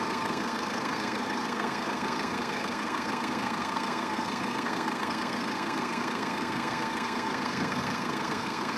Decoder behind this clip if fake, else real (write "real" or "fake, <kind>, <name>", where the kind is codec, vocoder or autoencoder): fake, codec, SNAC